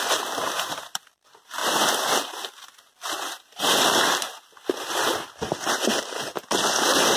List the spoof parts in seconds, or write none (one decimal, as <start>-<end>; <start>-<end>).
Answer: 0.0-1.6; 5.7-7.2